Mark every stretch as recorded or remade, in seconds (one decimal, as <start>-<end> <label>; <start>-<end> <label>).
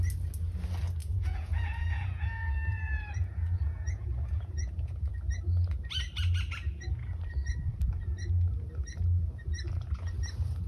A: 0.0-1.0 recorded; 1.0-5.1 remade; 5.1-10.7 recorded